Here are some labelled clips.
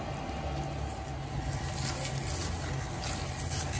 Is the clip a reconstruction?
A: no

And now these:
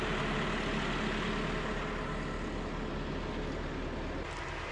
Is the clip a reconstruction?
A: no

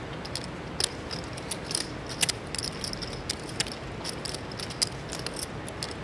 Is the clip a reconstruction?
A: no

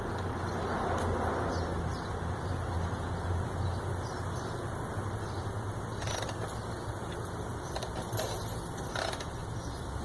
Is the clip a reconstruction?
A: yes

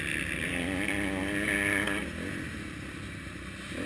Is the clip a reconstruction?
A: no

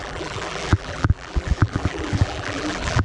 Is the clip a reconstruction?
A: yes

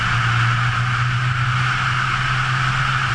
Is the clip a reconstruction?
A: no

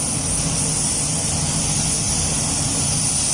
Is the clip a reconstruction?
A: no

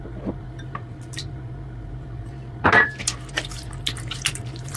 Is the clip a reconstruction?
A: yes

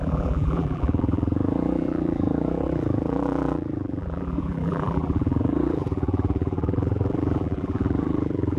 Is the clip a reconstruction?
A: yes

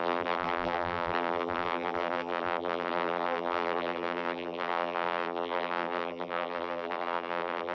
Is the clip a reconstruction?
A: yes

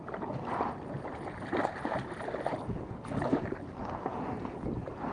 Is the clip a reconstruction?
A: no